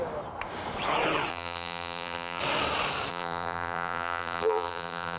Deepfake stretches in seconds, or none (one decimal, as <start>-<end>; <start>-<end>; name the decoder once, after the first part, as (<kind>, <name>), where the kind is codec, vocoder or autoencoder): 1.3-2.4 (vocoder, BigVGAN v2); 3.1-5.2

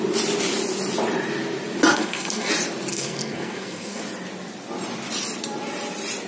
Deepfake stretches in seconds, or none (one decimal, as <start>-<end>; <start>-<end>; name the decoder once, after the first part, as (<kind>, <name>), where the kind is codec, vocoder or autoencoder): 1.9-2.5 (codec, SNAC); 2.9-4.0

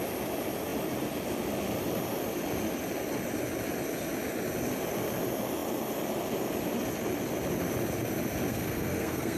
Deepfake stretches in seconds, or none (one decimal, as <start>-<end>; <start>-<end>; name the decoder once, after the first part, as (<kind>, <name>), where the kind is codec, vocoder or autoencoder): 8.5-9.4 (codec, SNAC)

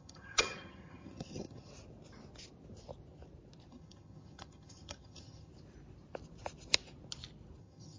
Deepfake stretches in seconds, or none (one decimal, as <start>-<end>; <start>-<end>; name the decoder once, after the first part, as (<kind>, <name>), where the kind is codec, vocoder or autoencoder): 0.0-1.7 (vocoder, HiFi-GAN); 3.7-5.5; 7.6-8.0